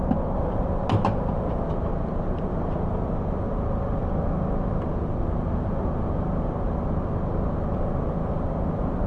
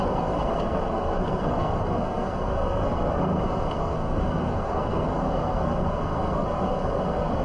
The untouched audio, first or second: first